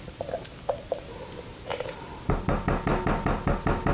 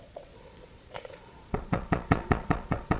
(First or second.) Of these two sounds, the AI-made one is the second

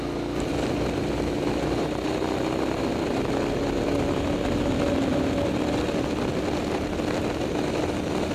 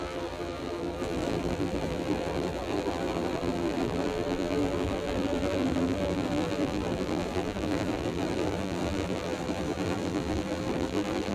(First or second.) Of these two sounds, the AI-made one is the second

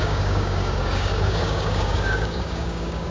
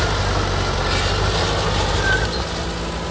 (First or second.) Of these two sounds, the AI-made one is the first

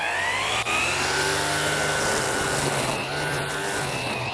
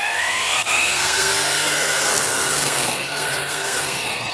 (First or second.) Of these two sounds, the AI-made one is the second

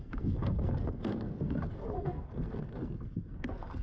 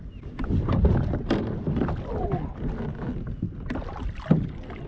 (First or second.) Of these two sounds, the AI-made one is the first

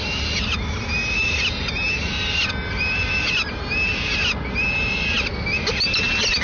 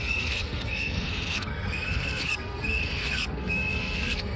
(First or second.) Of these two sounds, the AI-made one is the second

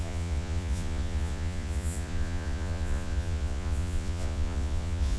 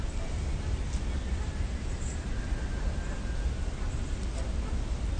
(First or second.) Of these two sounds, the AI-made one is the first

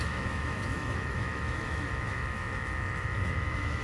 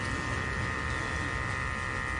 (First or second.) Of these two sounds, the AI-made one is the first